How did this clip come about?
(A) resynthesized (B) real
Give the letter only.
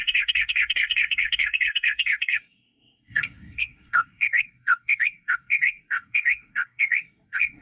A